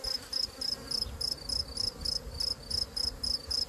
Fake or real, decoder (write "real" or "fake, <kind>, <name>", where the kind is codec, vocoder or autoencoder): real